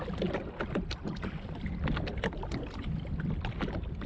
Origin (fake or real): real